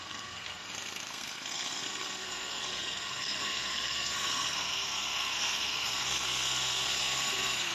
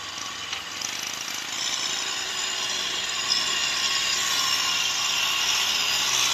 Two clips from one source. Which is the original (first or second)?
second